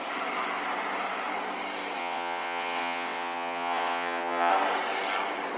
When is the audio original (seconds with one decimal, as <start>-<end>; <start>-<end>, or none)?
0.0-2.0; 4.5-5.6